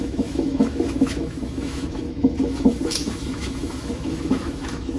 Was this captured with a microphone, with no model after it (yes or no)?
no